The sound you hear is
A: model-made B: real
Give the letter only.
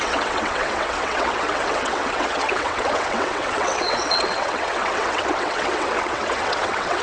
A